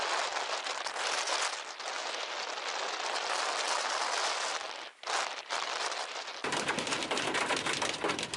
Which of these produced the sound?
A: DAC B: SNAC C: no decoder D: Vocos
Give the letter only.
C